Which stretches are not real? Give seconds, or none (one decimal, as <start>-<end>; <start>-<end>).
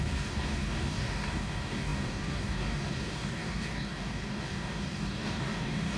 0.0-6.0